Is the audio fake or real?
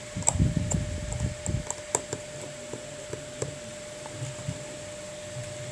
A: fake